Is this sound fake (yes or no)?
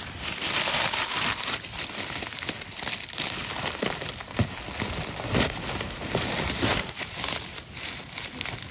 no